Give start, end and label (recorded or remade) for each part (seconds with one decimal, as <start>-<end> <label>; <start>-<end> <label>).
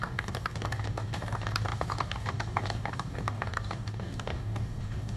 0.0-5.2 remade